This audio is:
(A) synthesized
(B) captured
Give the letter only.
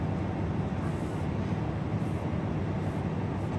B